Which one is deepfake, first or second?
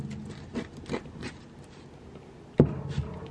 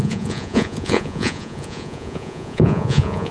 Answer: second